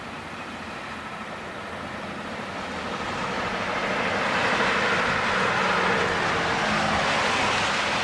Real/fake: real